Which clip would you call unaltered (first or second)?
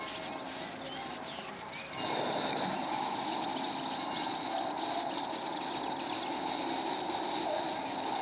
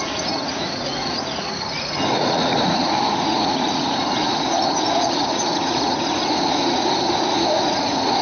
first